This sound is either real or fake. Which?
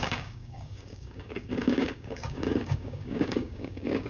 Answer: fake